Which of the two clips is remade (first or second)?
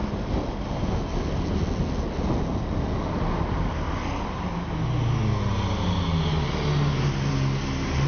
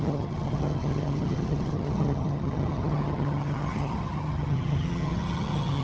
second